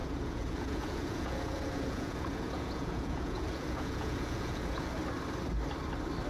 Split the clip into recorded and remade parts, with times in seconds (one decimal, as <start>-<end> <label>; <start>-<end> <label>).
0.0-5.0 remade; 5.0-6.3 recorded